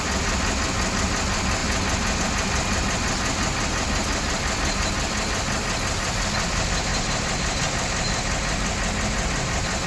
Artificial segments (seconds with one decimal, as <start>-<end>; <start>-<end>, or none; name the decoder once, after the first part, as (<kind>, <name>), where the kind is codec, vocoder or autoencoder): none